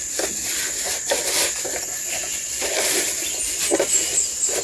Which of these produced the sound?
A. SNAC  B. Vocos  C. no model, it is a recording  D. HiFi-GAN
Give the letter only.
C